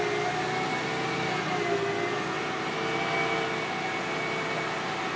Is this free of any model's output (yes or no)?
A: yes